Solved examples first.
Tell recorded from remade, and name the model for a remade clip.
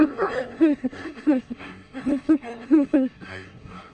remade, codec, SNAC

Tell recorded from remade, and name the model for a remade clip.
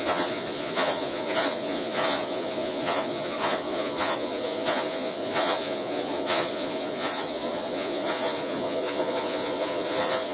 remade, vocoder, Vocos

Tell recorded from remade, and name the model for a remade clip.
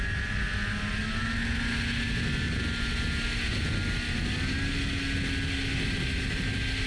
recorded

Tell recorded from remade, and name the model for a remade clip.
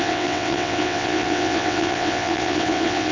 remade, vocoder, WaveNeXt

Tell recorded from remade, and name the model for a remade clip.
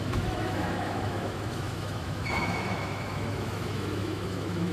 remade, autoencoder, DAC-VAE